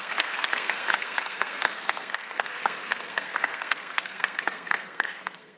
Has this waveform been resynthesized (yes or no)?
yes